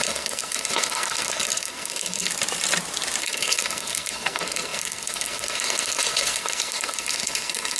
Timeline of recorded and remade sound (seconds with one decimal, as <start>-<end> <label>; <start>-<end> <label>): 0.0-2.3 remade; 2.3-3.2 recorded; 3.2-7.8 remade